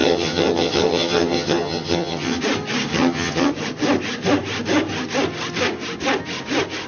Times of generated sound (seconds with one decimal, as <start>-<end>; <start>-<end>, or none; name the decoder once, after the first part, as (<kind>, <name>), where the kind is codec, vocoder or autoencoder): 0.0-2.4 (vocoder, HiFi-GAN); 2.9-3.5